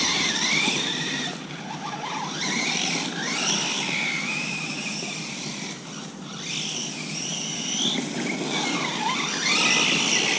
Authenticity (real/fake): real